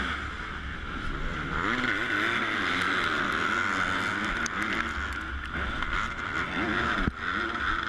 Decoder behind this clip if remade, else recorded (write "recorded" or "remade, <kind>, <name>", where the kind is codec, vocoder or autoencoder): recorded